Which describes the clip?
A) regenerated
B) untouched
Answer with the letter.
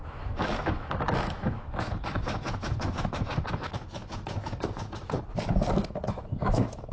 A